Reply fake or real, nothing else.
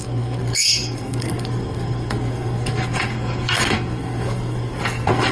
fake